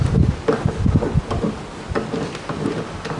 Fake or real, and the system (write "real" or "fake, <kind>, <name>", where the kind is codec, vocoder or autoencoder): real